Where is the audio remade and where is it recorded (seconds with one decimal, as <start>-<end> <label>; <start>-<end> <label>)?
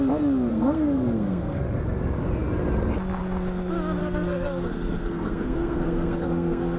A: 0.0-0.5 recorded; 0.5-1.6 remade; 1.6-4.0 recorded; 4.0-6.8 remade